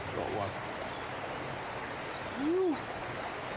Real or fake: real